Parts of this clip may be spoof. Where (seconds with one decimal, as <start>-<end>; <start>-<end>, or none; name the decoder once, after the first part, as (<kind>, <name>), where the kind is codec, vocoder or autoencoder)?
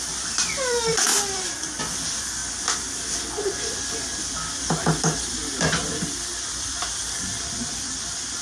0.0-2.4 (vocoder, BigVGAN v2); 6.6-8.4